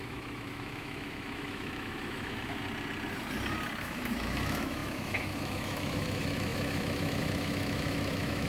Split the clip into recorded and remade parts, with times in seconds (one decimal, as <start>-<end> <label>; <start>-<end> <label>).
0.0-2.6 remade; 2.6-3.8 recorded; 3.8-8.5 remade